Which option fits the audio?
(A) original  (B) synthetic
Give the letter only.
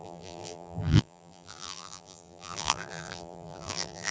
B